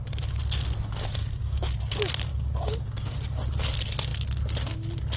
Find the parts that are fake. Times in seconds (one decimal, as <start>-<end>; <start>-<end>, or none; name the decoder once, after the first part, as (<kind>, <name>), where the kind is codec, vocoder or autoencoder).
1.2-1.7 (codec, DAC); 2.3-3.2

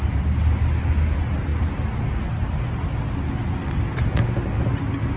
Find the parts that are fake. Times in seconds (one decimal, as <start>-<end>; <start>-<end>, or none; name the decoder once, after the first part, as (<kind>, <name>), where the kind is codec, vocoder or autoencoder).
none

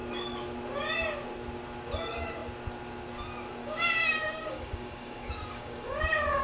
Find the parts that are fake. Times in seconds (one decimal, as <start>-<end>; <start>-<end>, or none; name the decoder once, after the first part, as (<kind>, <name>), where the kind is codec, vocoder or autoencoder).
3.6-6.4 (codec, DAC)